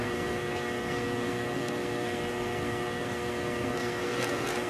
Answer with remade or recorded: remade